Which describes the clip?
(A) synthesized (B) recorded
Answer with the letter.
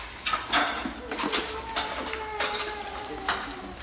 B